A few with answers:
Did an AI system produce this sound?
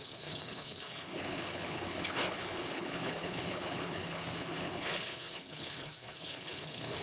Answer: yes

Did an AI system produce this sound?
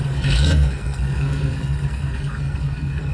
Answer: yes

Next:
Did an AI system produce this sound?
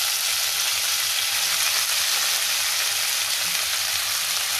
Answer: no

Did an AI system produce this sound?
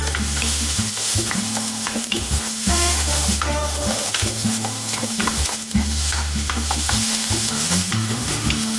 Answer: yes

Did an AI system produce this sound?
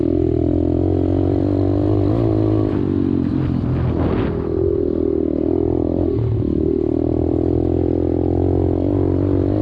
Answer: no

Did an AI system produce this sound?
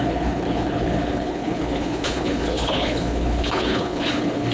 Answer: yes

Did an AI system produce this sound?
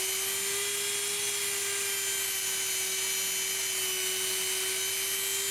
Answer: no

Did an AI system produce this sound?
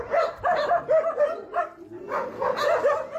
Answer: no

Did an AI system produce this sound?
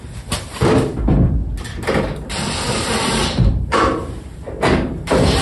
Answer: yes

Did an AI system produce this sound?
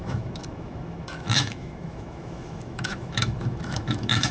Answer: yes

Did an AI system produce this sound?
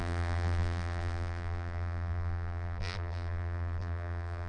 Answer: yes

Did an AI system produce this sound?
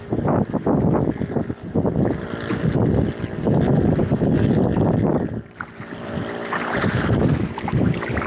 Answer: no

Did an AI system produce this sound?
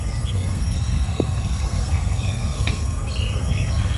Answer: yes